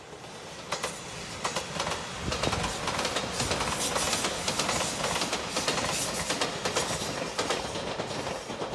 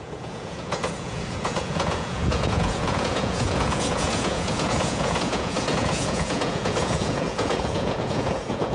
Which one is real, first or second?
first